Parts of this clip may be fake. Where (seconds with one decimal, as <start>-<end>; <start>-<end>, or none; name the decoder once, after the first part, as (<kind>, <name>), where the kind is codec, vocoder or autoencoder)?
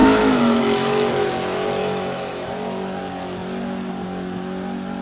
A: 0.0-1.1 (autoencoder, DAC-VAE); 1.8-2.5